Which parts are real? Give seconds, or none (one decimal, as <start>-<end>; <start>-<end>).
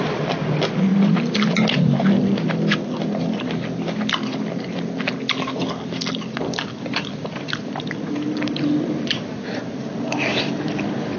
0.0-0.9; 4.8-5.6; 9.3-11.2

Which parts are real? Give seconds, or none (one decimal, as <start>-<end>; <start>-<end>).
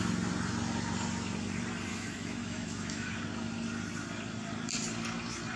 0.0-1.9; 3.1-5.6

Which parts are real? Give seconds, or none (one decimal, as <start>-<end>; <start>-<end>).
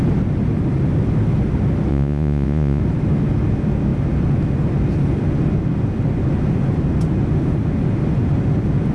0.0-1.9; 2.8-8.9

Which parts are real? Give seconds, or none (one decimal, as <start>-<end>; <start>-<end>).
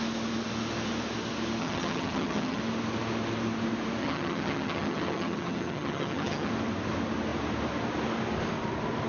0.0-1.6; 2.6-4.0; 6.5-9.1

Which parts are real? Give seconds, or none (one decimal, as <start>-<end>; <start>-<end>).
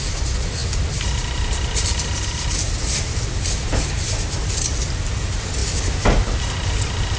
0.0-7.2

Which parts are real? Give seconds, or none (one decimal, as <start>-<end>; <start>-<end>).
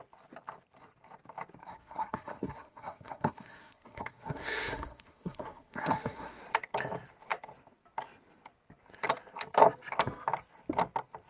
0.0-1.6; 6.4-11.3